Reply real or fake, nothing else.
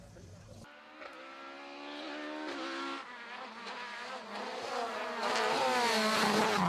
real